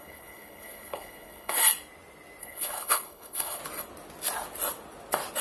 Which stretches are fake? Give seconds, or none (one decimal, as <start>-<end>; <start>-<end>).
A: 0.0-1.6; 2.4-3.6